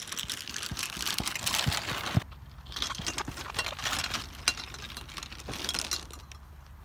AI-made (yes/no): no